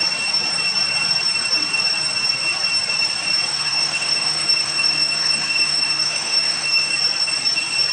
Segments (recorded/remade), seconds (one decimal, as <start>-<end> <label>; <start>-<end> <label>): 0.0-3.5 recorded; 3.5-6.9 remade; 6.9-7.9 recorded